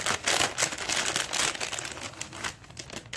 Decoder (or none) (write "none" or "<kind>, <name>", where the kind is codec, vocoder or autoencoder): none